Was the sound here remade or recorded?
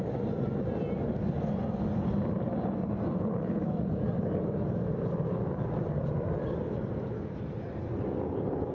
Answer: remade